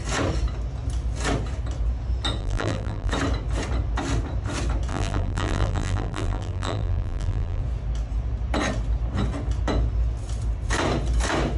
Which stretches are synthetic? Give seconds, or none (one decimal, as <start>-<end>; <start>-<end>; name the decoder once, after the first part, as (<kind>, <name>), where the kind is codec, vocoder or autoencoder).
2.4-3.1 (vocoder, BigVGAN v2); 4.9-7.6